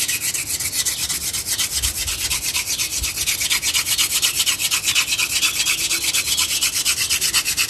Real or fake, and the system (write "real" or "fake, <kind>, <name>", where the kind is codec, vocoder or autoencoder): real